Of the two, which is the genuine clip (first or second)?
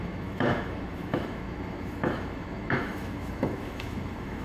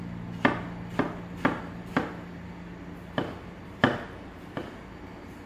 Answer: second